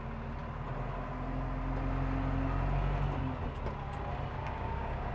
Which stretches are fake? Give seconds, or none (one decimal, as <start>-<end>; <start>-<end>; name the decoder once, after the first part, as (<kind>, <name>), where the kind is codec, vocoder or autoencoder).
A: 4.4-5.1 (codec, DAC)